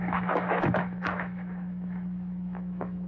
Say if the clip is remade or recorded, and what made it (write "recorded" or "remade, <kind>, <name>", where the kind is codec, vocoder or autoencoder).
remade, autoencoder, DAC-VAE